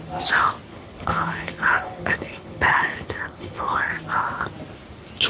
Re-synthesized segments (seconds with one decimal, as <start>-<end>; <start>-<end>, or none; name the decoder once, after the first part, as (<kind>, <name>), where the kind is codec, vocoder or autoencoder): 0.7-3.9 (codec, HILCodec)